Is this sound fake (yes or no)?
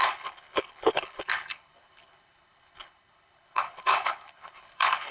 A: yes